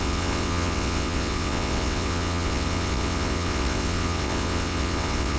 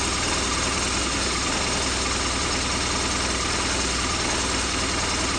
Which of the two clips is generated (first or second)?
first